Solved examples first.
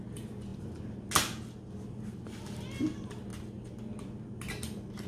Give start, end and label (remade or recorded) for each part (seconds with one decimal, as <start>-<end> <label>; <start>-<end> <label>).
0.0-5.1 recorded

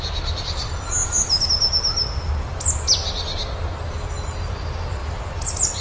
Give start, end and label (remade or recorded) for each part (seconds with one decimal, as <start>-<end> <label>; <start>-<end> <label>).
0.0-5.8 recorded

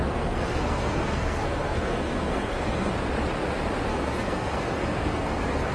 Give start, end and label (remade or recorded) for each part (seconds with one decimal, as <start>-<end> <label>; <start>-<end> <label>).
0.0-2.9 remade; 2.9-3.9 recorded; 3.9-5.7 remade

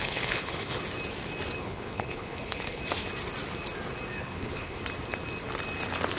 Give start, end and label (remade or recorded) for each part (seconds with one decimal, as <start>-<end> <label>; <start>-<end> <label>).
0.0-0.8 remade; 0.8-1.6 recorded; 1.6-2.8 remade; 2.8-4.2 recorded; 4.2-4.8 remade; 4.8-6.2 recorded